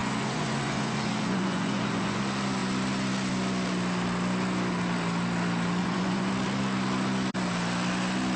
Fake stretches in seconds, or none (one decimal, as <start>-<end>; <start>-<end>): 0.0-2.2; 5.8-6.3